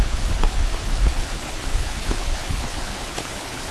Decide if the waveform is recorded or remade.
remade